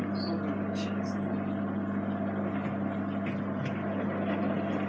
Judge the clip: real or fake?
real